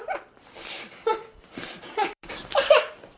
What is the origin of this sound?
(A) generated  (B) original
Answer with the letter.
A